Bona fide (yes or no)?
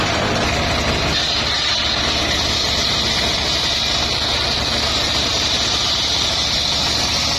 yes